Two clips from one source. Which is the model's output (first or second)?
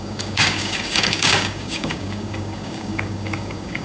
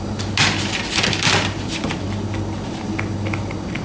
first